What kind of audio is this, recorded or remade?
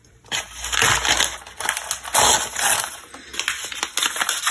recorded